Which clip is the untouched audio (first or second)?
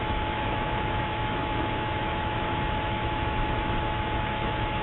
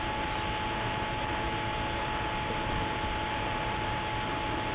second